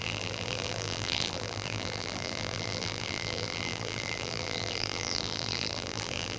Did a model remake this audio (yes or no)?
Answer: yes